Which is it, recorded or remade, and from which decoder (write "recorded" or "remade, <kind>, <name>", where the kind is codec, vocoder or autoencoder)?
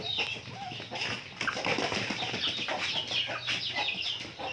recorded